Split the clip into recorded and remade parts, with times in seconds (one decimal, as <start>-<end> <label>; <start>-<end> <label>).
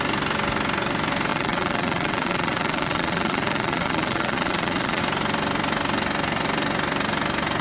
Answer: 0.0-1.3 recorded; 1.3-5.0 remade; 5.0-7.6 recorded